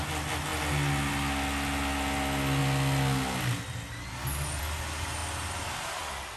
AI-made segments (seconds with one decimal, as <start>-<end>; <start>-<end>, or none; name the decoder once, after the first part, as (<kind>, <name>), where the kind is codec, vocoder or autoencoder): none